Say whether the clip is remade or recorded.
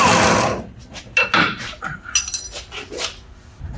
recorded